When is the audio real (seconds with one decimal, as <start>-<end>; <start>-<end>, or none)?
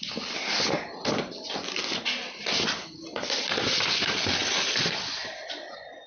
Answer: 0.0-6.1